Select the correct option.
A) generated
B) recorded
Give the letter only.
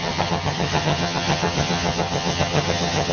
A